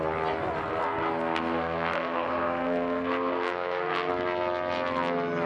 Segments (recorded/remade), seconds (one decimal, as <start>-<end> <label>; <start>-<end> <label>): 0.0-0.8 recorded; 0.8-4.1 remade; 4.1-5.5 recorded